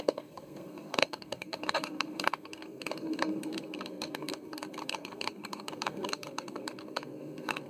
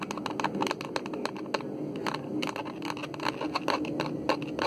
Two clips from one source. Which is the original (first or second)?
second